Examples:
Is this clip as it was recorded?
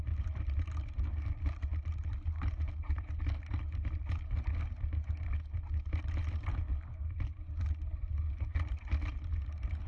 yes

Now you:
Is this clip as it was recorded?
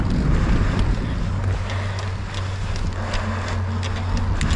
yes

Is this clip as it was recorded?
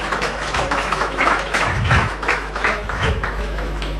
no